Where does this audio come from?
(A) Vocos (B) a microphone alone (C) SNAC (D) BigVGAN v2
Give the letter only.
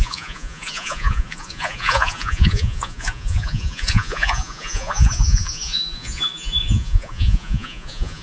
A